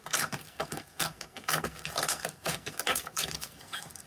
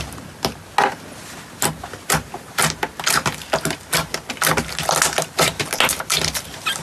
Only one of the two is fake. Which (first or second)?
first